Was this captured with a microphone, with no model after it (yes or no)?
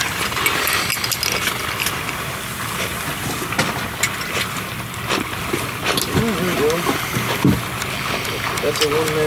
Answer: yes